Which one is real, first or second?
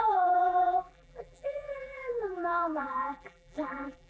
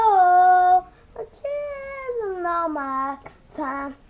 second